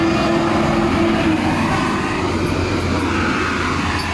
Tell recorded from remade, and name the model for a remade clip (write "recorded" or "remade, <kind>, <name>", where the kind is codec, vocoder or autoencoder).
recorded